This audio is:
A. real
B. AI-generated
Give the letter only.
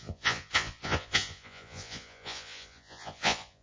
B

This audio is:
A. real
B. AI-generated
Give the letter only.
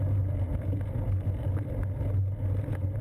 A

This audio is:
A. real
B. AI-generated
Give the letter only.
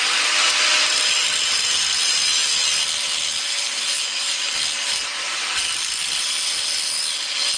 A